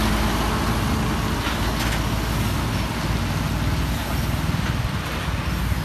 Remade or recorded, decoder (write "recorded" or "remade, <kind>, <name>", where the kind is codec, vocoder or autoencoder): recorded